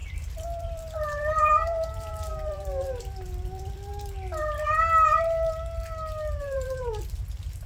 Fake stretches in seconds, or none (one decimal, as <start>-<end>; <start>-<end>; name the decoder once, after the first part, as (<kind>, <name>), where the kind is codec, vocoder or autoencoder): 0.0-3.9 (vocoder, BigVGAN v2); 6.4-7.7

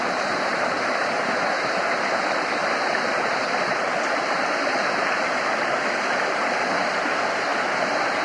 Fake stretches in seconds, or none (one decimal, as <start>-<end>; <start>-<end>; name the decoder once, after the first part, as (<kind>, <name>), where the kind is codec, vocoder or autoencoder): 2.6-7.1 (vocoder, BigVGAN v2); 7.5-8.2

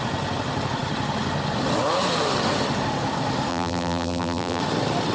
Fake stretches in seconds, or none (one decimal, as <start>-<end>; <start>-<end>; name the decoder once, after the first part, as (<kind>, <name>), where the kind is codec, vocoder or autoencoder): 3.5-4.6 (vocoder, BigVGAN v2)

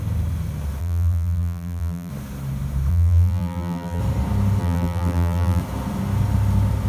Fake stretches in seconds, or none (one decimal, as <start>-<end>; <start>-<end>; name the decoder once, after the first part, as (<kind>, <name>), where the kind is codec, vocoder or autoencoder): 0.8-2.1 (vocoder, BigVGAN v2); 2.9-4.0; 4.6-5.6

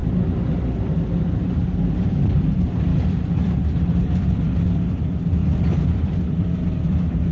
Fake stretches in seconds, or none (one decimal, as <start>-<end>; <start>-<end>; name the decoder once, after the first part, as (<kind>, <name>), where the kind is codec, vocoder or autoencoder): 0.0-7.3 (vocoder, BigVGAN v2)